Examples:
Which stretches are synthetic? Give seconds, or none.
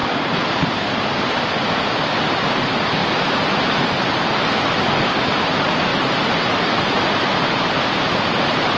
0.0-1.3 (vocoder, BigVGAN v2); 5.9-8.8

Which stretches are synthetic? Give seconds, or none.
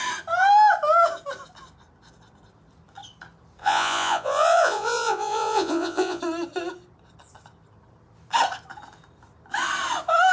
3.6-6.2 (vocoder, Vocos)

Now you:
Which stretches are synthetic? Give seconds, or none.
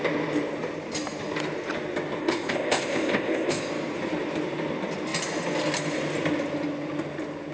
2.2-3.7 (codec, ZipCodec)